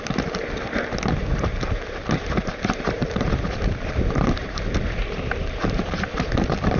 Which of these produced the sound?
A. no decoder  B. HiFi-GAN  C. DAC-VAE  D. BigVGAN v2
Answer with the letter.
D